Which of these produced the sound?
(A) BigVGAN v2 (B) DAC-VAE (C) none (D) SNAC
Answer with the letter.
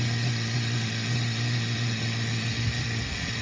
C